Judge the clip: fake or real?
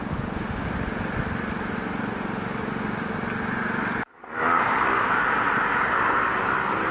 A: real